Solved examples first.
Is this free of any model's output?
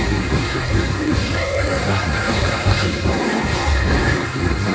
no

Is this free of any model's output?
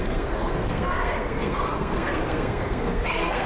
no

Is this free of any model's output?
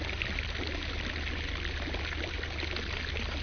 yes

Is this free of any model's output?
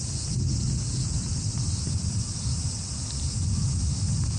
yes